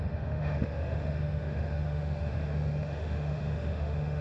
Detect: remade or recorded remade